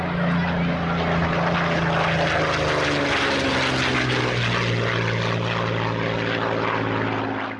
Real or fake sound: real